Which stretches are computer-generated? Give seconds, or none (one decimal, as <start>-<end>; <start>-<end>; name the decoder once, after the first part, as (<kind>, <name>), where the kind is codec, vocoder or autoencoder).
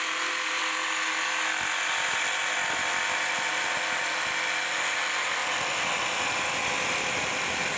none